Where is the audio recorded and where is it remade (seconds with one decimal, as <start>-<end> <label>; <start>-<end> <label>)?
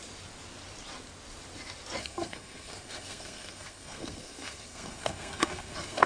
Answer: 0.0-2.0 recorded; 2.0-6.1 remade